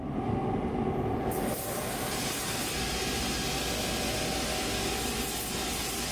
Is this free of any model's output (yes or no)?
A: yes